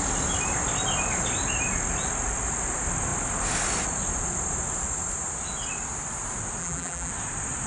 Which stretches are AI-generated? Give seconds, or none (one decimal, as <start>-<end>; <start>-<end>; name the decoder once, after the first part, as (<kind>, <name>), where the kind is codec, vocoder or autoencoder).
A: 6.6-7.1 (vocoder, BigVGAN v2)